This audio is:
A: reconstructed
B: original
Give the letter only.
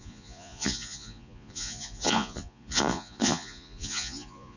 A